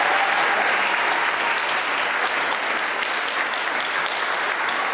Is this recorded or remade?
recorded